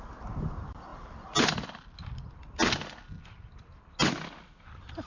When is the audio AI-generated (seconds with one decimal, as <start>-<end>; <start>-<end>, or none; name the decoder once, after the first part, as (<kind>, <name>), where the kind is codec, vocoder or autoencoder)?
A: none